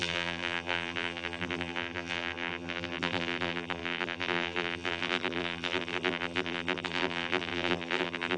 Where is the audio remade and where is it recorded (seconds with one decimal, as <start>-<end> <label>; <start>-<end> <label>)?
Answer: 0.0-8.4 remade

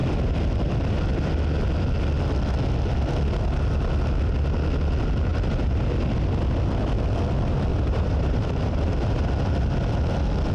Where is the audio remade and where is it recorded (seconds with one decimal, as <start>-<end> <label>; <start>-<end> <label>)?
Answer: 0.0-7.7 recorded; 7.7-9.2 remade; 9.2-10.5 recorded

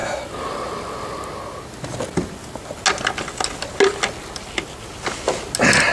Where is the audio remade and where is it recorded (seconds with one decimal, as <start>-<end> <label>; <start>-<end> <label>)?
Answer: 0.0-5.9 recorded

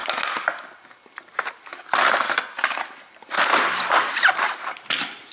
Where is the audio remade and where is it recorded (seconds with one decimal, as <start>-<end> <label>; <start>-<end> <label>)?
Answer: 0.0-0.7 remade; 0.7-1.7 recorded; 1.7-5.3 remade